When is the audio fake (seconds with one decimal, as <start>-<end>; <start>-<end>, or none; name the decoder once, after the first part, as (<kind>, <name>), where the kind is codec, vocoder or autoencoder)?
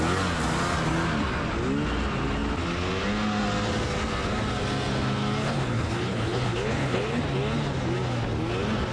5.4-7.2 (codec, HILCodec)